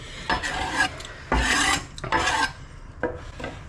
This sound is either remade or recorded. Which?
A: recorded